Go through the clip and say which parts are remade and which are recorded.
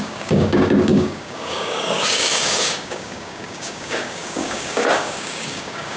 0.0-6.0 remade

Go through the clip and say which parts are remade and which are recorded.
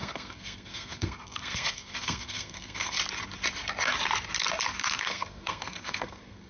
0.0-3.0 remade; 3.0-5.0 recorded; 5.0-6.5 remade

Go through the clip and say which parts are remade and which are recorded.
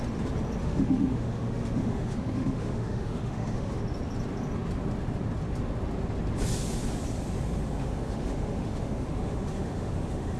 0.0-0.6 recorded; 0.6-3.8 remade; 3.8-7.8 recorded; 7.8-10.4 remade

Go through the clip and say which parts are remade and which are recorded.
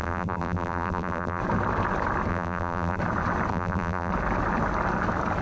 0.0-1.4 remade; 1.4-2.3 recorded; 2.3-3.0 remade; 3.0-3.5 recorded; 3.5-4.1 remade; 4.1-5.4 recorded